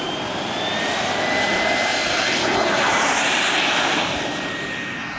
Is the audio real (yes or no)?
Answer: no